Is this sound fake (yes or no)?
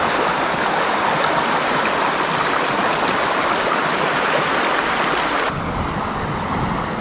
no